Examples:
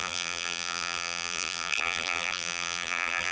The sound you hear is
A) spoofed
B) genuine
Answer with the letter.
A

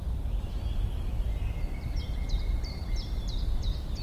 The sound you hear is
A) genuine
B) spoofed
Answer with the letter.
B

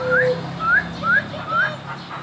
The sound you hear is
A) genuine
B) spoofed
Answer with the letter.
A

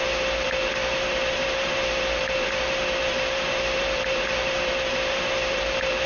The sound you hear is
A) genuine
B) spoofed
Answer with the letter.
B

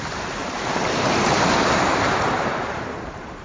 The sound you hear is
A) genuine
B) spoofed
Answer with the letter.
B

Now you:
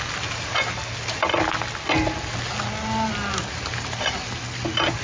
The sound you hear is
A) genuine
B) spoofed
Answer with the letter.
A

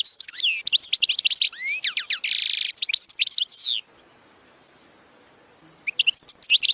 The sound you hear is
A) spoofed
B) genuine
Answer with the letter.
B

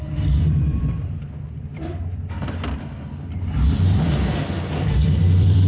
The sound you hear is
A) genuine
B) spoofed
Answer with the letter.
B